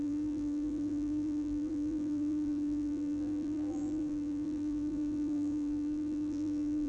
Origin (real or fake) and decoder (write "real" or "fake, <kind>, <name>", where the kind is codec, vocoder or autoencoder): fake, vocoder, BigVGAN v2